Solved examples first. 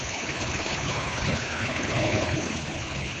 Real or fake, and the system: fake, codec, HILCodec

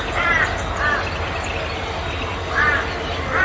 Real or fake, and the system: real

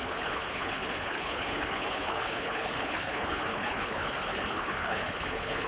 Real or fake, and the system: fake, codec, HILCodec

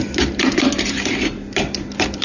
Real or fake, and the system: real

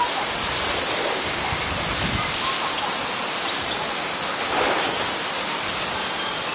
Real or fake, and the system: real